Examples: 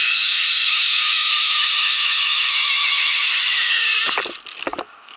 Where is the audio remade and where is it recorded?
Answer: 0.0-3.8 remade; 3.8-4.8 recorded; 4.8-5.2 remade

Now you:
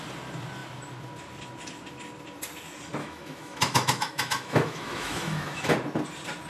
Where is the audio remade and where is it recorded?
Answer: 0.0-3.0 recorded; 3.0-5.7 remade; 5.7-6.5 recorded

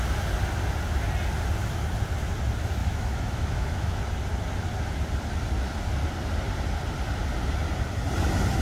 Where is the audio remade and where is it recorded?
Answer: 0.0-2.8 recorded; 2.8-4.0 remade; 4.0-8.6 recorded

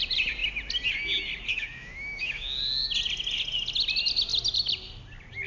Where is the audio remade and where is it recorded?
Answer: 0.0-1.5 recorded; 1.5-2.6 remade; 2.6-5.5 recorded

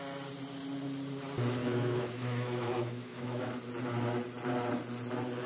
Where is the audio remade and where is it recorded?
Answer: 0.0-1.6 recorded; 1.6-3.6 remade; 3.6-5.5 recorded